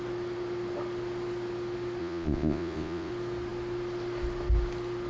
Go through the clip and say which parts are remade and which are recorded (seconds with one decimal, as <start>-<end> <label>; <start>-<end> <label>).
0.0-2.0 recorded; 2.0-3.1 remade; 3.1-5.1 recorded